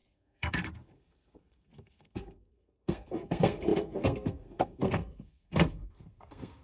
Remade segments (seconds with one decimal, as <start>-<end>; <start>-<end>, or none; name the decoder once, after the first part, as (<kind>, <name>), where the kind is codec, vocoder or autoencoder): 0.0-6.6 (codec, SNAC)